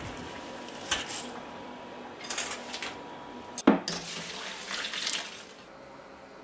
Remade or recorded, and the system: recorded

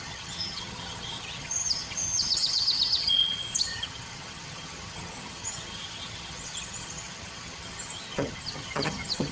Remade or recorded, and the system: remade, vocoder, HiFi-GAN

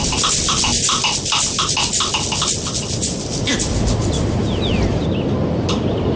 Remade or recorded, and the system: recorded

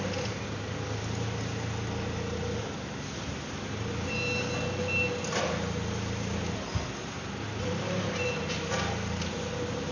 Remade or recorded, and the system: recorded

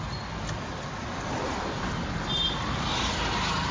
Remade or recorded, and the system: recorded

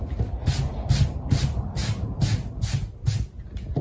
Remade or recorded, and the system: recorded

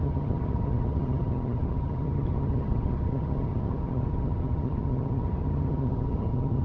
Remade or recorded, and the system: remade, vocoder, HiFi-GAN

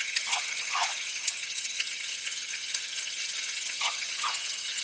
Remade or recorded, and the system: remade, vocoder, HiFi-GAN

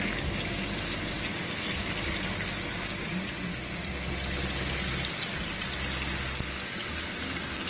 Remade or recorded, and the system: recorded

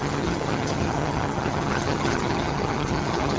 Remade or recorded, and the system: remade, vocoder, HiFi-GAN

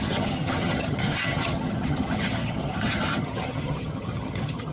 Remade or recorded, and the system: remade, vocoder, HiFi-GAN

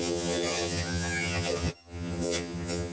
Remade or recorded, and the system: remade, vocoder, HiFi-GAN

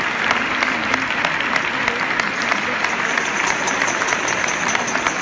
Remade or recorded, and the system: recorded